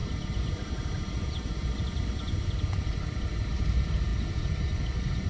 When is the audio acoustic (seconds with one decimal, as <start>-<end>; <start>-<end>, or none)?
0.0-5.3